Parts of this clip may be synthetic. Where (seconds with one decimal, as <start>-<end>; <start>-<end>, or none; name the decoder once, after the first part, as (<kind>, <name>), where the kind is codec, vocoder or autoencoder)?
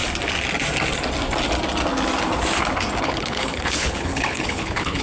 3.0-5.0 (codec, HILCodec)